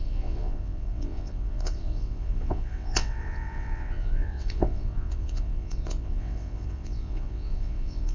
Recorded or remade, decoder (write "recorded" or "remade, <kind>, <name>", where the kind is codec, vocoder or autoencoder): remade, vocoder, WaveNeXt